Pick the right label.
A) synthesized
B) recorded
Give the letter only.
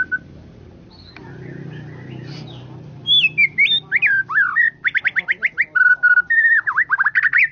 B